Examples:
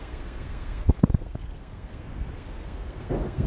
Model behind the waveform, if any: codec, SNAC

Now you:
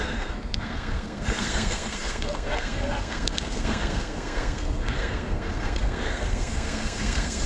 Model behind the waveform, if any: codec, SNAC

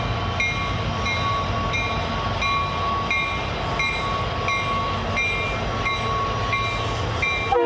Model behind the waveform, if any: none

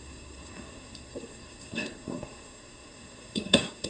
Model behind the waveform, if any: codec, SNAC